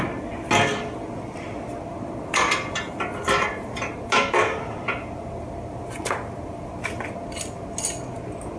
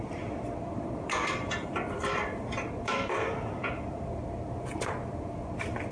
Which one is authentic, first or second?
first